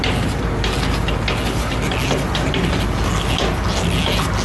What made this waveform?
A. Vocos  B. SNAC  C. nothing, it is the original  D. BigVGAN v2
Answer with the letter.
C